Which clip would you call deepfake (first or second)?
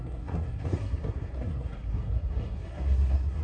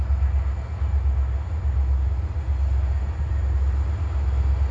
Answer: first